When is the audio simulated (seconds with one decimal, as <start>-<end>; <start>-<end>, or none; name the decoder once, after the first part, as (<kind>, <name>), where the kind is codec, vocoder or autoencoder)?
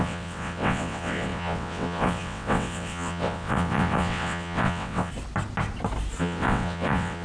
0.0-5.1 (vocoder, WaveNeXt); 6.2-7.2